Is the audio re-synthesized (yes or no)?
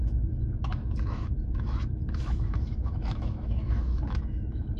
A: yes